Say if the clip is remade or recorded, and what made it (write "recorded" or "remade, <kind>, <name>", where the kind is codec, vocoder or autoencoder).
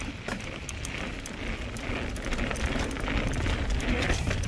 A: recorded